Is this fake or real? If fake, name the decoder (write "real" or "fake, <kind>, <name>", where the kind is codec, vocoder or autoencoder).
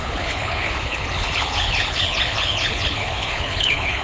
fake, codec, HILCodec